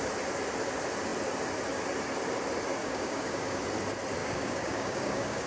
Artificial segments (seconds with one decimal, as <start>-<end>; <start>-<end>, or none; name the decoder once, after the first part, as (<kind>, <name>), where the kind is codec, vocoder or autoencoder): 2.8-3.6 (codec, DAC); 4.2-5.5

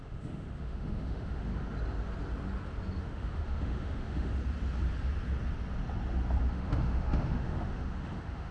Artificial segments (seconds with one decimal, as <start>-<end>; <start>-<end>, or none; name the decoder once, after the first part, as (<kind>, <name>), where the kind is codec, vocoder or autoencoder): 0.0-1.5 (autoencoder, DAC-VAE); 3.0-4.4; 6.5-8.5

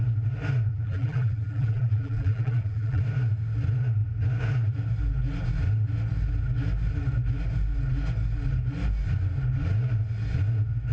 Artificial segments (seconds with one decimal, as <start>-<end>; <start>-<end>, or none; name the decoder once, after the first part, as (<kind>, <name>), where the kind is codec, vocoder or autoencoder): 0.7-3.0 (vocoder, BigVGAN v2)

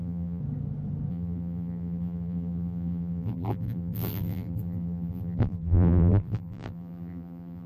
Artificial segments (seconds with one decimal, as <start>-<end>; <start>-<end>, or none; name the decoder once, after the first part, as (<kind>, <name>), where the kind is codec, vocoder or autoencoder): 0.0-0.4 (vocoder, BigVGAN v2); 1.1-7.7

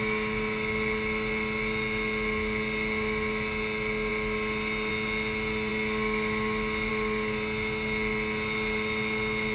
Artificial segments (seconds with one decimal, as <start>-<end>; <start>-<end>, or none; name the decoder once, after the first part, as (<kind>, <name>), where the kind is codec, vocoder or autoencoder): none